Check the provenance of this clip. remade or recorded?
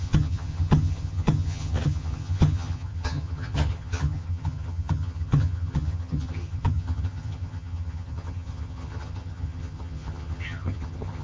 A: remade